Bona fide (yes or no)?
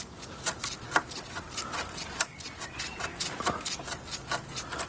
yes